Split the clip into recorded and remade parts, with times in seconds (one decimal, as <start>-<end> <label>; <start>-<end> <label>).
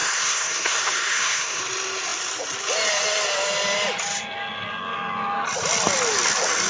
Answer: 0.0-1.6 remade; 1.6-6.7 recorded